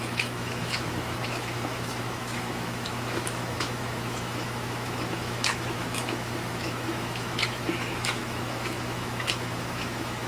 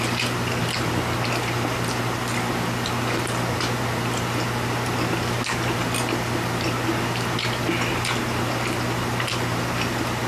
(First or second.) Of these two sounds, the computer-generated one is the first